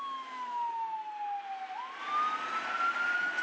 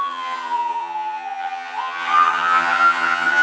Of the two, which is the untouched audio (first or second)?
first